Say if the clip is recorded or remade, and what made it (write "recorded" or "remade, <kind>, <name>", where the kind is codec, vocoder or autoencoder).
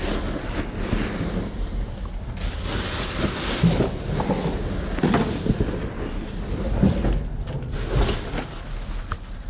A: recorded